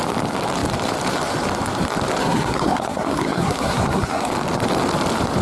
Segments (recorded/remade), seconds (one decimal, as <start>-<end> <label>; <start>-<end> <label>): 0.0-2.2 recorded; 2.2-4.3 remade; 4.3-5.4 recorded